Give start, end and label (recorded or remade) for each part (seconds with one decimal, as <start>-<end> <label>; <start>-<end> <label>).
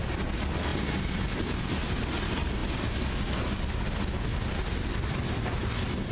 0.0-6.1 recorded